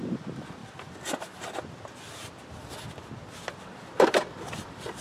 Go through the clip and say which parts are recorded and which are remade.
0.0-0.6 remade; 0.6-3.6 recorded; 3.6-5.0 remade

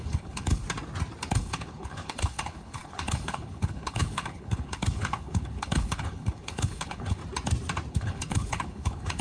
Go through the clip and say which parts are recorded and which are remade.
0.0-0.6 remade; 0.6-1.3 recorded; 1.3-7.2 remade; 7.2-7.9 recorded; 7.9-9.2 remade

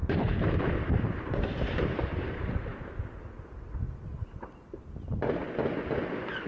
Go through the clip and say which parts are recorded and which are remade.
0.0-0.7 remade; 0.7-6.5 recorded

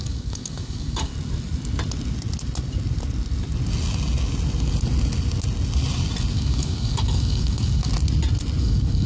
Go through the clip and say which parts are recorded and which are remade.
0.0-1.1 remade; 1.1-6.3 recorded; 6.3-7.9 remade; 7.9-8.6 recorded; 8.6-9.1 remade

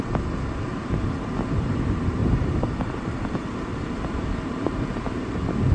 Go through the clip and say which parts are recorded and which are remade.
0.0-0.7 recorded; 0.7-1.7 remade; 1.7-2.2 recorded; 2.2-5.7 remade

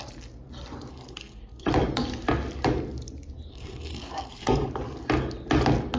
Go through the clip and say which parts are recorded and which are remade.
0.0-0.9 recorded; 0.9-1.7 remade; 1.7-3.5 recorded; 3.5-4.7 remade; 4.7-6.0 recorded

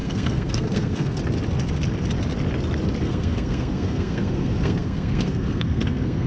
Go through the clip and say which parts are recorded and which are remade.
0.0-1.2 remade; 1.2-3.0 recorded; 3.0-6.3 remade